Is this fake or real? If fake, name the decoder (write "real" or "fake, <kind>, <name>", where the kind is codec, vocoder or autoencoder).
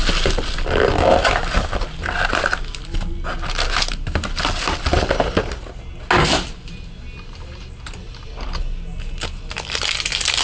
real